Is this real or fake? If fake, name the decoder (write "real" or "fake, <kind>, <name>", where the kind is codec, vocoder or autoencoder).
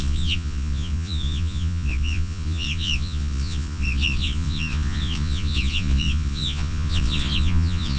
fake, vocoder, Vocos